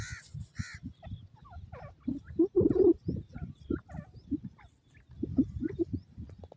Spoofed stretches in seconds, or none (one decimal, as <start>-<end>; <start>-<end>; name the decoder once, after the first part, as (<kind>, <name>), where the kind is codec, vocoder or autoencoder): none